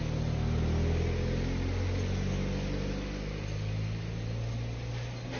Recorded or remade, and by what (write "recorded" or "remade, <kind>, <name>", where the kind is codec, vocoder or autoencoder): recorded